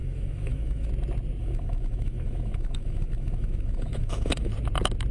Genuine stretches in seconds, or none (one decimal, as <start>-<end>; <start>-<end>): 0.9-1.4; 4.5-5.1